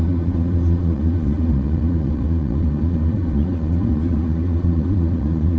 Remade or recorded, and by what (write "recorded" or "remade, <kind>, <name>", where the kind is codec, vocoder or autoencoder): remade, vocoder, Vocos